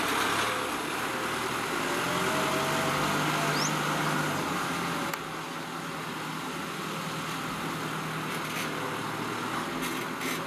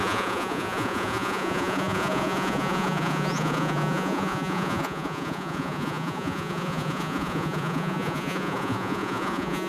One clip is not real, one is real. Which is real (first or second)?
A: first